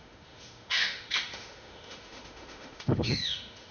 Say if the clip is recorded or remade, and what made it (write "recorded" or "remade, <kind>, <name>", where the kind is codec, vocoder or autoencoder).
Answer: remade, autoencoder, DAC-VAE